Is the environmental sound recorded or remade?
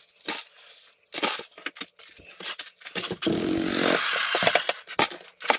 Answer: recorded